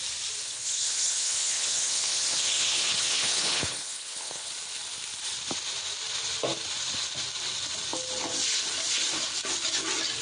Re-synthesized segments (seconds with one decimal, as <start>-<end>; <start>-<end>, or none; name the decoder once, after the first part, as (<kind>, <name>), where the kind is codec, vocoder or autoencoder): 0.4-4.5 (codec, HILCodec)